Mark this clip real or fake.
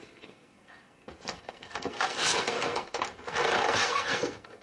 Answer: fake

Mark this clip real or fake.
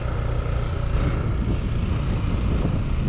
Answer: fake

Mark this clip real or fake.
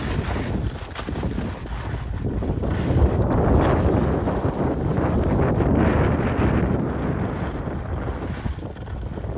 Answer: real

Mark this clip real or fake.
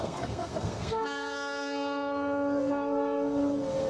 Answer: fake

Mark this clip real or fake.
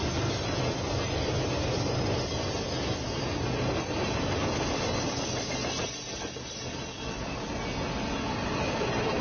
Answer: real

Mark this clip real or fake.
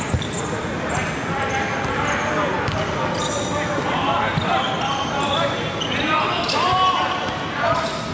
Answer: real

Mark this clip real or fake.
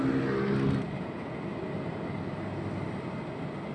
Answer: real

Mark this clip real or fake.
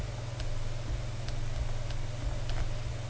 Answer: real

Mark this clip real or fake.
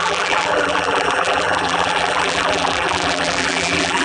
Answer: fake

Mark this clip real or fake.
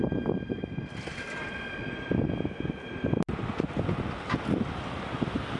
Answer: real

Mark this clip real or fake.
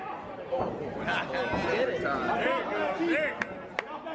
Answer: real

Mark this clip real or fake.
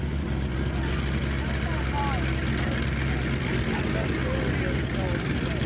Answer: real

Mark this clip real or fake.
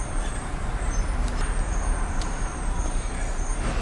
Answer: fake